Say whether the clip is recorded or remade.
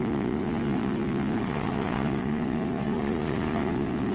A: remade